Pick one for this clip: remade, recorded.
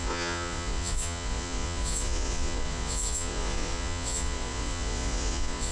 remade